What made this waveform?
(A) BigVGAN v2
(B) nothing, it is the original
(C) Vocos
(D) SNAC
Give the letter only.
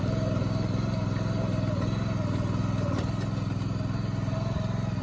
B